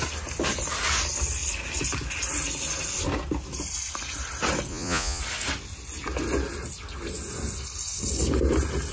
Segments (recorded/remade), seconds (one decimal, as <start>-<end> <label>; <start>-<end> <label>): 0.0-4.7 recorded; 4.7-5.2 remade; 5.2-8.9 recorded

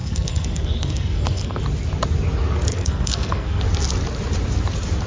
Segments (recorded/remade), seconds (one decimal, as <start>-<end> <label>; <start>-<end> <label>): 0.0-1.6 remade; 1.6-2.7 recorded; 2.7-3.6 remade; 3.6-5.1 recorded

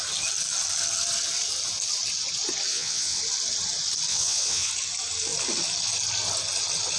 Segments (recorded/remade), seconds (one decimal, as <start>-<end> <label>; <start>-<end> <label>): 0.0-2.7 recorded; 2.7-3.2 remade; 3.2-4.1 recorded; 4.1-4.7 remade; 4.7-7.0 recorded

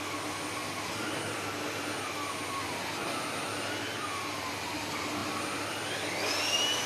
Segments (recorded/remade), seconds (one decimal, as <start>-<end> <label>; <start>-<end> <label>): 0.0-6.9 recorded

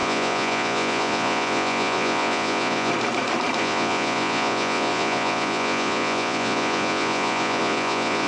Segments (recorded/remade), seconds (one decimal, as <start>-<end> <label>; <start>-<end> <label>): 0.0-2.9 remade; 2.9-3.6 recorded; 3.6-8.3 remade